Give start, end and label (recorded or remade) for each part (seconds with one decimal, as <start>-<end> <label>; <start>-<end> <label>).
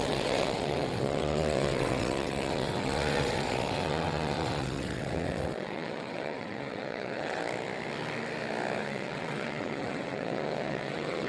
0.0-7.4 remade; 7.4-8.8 recorded; 8.8-11.3 remade